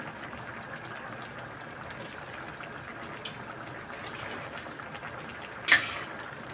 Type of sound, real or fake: real